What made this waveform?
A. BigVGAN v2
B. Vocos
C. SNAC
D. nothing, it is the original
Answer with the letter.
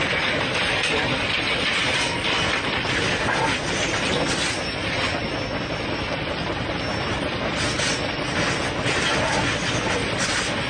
D